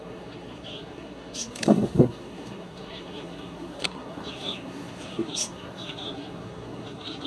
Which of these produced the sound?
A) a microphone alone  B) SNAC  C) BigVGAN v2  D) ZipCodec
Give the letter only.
B